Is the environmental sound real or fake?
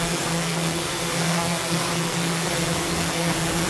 fake